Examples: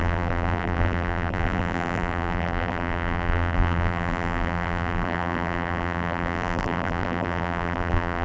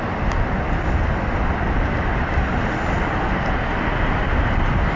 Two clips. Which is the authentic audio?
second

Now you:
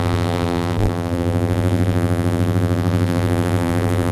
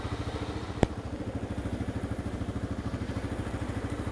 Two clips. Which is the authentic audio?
second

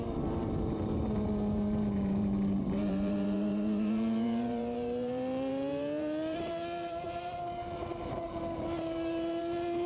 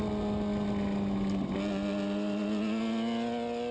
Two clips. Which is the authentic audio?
second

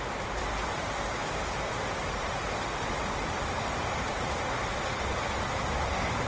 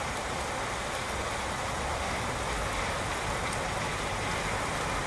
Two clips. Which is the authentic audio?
second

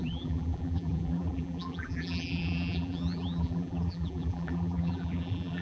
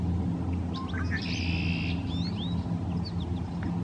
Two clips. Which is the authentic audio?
second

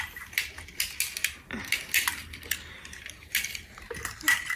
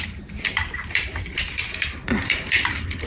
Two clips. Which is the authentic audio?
first